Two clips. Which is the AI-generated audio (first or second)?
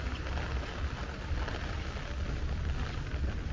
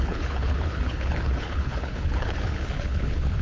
second